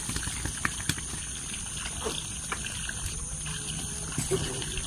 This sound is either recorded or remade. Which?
recorded